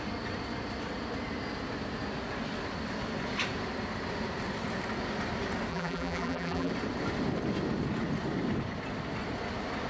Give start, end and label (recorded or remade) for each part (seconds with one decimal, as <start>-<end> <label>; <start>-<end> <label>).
0.0-5.7 recorded; 5.7-6.7 remade; 6.7-9.9 recorded